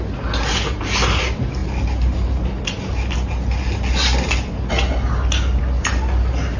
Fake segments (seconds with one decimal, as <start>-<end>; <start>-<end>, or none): none